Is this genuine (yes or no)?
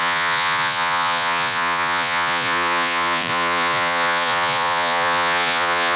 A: no